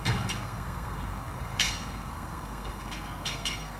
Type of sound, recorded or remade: remade